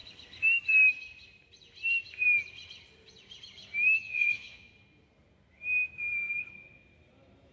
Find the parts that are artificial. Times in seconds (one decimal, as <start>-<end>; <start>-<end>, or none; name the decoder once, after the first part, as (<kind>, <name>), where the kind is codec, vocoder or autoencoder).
4.0-4.7 (vocoder, Vocos)